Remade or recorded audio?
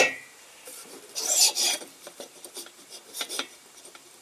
remade